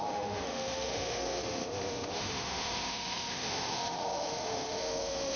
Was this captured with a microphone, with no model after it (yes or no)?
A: no